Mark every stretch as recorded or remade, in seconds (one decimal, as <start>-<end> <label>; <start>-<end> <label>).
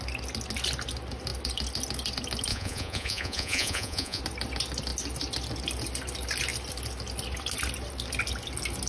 0.0-2.5 recorded; 2.5-4.2 remade; 4.2-8.9 recorded